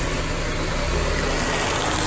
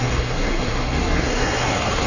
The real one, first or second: first